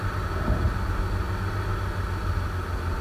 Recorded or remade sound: recorded